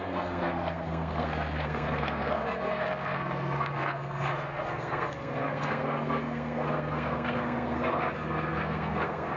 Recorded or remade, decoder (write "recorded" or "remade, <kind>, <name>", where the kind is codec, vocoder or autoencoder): remade, codec, SNAC